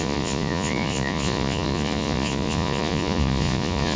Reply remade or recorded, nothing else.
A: remade